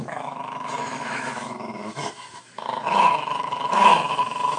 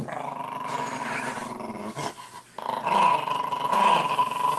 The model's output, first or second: first